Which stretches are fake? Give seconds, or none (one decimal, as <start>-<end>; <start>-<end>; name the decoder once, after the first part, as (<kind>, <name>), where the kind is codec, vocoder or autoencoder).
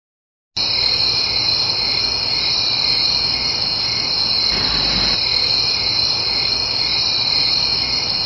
none